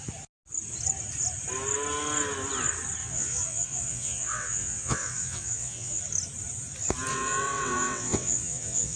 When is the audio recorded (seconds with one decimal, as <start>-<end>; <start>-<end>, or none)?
0.0-3.0; 6.0-7.1